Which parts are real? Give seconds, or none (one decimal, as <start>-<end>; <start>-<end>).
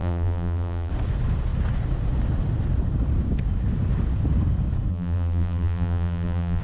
0.9-4.9